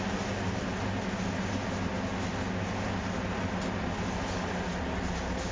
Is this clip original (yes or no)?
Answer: yes